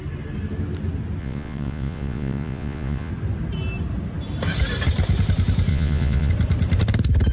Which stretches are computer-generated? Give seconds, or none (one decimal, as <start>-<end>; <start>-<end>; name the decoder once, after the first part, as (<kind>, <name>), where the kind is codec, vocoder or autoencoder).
1.2-3.1 (vocoder, Vocos); 5.7-6.3